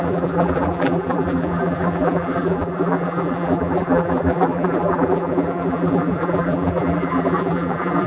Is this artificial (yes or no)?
yes